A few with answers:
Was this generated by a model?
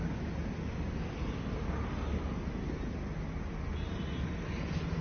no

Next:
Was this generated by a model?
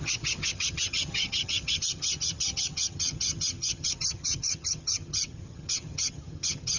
yes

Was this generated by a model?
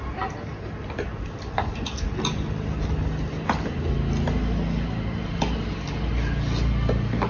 no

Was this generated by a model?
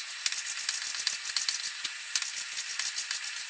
no